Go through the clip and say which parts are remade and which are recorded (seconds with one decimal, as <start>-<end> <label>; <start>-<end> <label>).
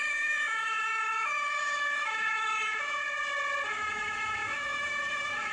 0.0-3.0 remade; 3.0-3.7 recorded; 3.7-5.5 remade